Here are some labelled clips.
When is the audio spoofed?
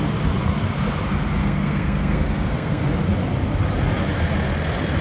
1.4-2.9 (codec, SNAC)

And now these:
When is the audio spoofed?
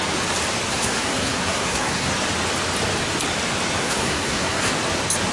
0.7-2.1 (codec, SNAC); 3.8-4.7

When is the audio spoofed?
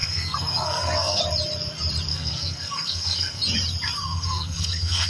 0.0-1.2 (codec, SNAC); 2.1-3.4; 4.0-5.1